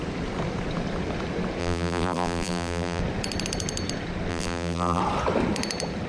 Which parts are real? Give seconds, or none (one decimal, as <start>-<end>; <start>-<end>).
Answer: 0.0-1.6; 3.0-4.3; 5.0-6.1